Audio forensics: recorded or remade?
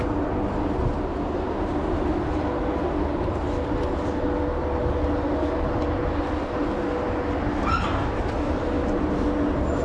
recorded